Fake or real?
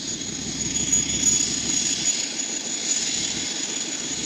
real